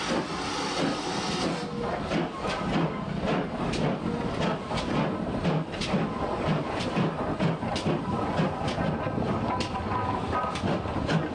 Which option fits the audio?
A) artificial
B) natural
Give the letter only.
B